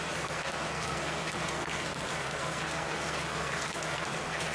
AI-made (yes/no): yes